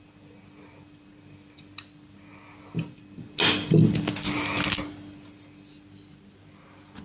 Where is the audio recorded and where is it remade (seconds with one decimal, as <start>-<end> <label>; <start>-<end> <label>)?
0.0-7.0 recorded